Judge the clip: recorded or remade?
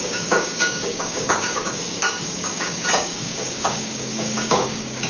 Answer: remade